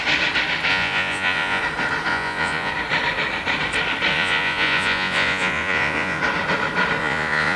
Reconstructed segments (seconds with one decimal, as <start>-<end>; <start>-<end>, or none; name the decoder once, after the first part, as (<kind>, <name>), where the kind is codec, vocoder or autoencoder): 0.7-1.6 (vocoder, Vocos); 2.1-2.7; 4.1-6.2; 7.0-7.6

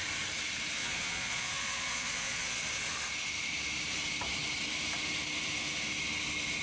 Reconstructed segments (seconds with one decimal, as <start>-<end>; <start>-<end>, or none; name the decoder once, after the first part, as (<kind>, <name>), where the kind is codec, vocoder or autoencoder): 0.8-2.6 (vocoder, Vocos)

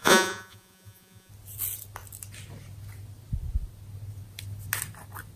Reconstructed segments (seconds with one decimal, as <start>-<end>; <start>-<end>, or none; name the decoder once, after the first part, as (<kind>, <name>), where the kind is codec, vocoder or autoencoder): 0.0-1.3 (vocoder, Vocos)

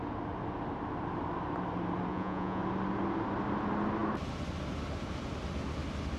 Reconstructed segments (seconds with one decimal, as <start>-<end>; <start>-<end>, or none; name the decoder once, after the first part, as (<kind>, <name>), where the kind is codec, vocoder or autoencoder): 2.1-2.6 (vocoder, Vocos)

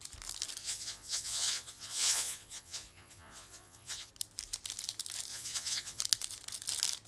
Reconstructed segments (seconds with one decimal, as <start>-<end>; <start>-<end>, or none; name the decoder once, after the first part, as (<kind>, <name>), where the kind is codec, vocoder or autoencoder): 0.6-4.1 (vocoder, Vocos); 5.3-6.0